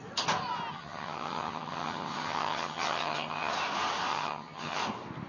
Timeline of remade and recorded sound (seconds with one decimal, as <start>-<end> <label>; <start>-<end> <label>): 0.0-0.7 recorded; 0.7-3.5 remade; 3.5-4.1 recorded; 4.1-4.8 remade; 4.8-5.3 recorded